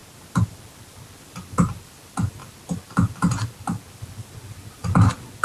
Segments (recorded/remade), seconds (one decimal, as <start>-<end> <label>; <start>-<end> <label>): 0.0-1.1 recorded; 1.1-5.4 remade